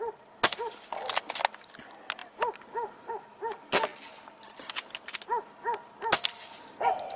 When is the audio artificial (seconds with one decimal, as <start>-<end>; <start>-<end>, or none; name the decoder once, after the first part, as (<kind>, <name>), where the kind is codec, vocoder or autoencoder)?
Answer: none

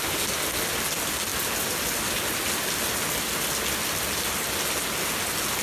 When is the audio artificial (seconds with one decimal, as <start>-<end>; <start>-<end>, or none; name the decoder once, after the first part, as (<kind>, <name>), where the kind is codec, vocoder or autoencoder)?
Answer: none

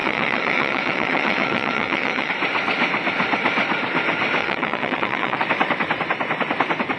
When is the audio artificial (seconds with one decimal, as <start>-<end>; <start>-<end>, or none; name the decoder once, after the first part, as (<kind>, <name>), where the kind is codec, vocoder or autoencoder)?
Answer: 0.0-2.3 (vocoder, WaveNeXt); 4.4-5.4

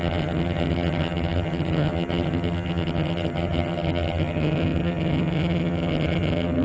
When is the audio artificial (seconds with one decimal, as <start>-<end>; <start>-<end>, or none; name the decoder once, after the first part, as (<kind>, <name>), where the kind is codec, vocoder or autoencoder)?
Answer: 0.0-6.6 (vocoder, HiFi-GAN)

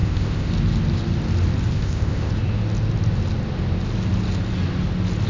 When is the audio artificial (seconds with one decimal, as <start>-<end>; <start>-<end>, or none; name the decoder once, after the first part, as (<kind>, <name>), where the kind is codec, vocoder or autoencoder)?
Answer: 0.0-0.5 (codec, ZipCodec); 1.7-2.3

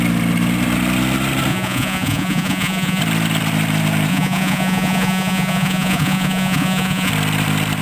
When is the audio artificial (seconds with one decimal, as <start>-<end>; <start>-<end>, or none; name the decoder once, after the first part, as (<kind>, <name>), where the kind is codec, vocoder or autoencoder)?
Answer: 1.5-3.0 (vocoder, Vocos); 4.1-7.1